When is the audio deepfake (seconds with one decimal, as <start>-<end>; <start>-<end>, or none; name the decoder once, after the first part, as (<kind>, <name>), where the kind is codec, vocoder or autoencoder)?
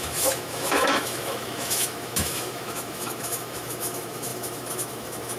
0.0-5.4 (autoencoder, DAC-VAE)